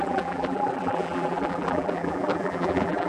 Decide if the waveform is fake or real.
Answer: fake